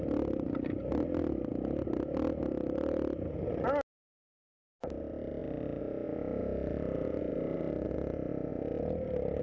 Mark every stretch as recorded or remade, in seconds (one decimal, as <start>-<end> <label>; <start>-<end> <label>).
0.0-9.4 recorded